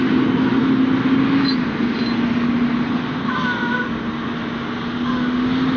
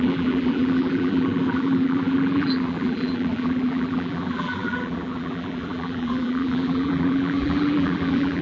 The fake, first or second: second